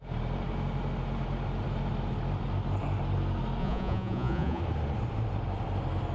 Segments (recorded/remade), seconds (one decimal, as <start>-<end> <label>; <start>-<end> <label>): 0.0-3.6 recorded; 3.6-4.6 remade; 4.6-6.1 recorded